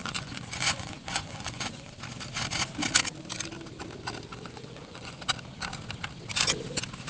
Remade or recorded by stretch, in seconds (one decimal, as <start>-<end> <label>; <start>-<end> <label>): 0.0-1.9 remade; 1.9-4.3 recorded; 4.3-5.2 remade; 5.2-7.1 recorded